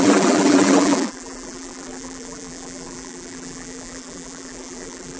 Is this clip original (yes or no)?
no